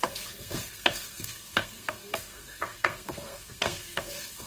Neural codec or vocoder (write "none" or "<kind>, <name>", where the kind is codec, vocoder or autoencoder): codec, SNAC